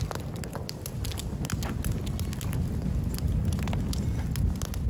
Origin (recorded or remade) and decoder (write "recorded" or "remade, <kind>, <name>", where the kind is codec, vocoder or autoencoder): recorded